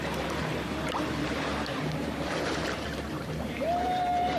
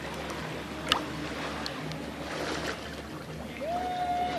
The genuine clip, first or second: second